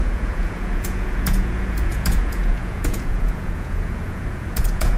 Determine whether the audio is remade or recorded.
remade